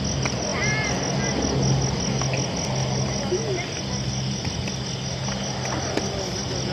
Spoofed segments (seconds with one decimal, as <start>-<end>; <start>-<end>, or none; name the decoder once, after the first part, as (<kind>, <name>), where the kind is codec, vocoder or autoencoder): none